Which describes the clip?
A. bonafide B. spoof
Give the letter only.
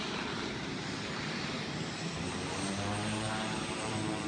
B